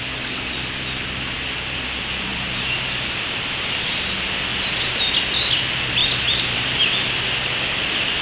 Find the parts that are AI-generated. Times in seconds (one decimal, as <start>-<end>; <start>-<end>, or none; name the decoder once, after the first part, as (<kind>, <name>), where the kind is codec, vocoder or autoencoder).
2.3-4.0 (vocoder, BigVGAN v2); 4.5-5.0; 6.0-6.9